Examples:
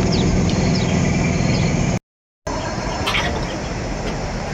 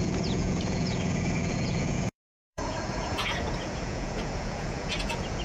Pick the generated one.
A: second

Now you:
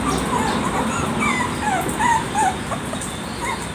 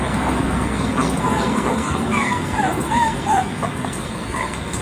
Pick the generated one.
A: second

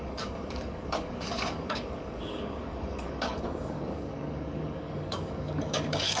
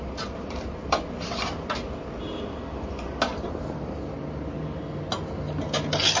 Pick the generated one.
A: first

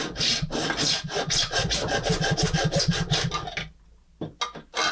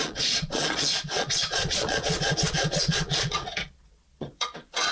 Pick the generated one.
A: second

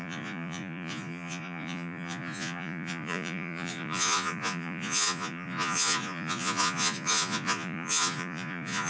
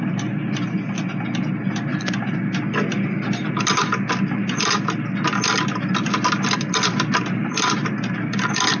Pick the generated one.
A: first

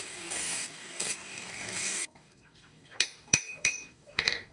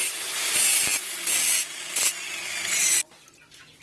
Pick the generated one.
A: first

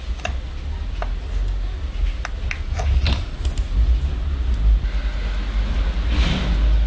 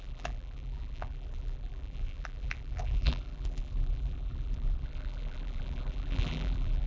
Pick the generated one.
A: second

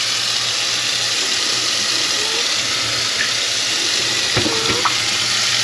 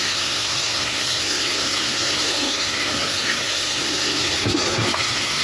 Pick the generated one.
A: second